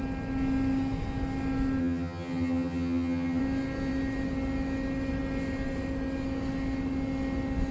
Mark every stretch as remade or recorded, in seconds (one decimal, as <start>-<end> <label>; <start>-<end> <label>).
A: 0.0-1.8 recorded; 1.8-3.4 remade; 3.4-7.7 recorded